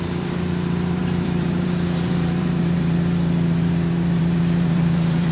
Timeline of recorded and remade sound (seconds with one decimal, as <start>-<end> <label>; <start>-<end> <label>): 0.0-5.3 remade